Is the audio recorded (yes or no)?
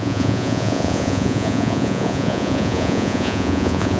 no